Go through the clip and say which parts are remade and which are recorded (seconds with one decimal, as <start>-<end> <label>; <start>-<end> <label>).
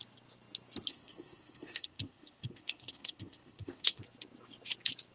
0.0-0.9 recorded; 0.9-4.0 remade; 4.0-5.1 recorded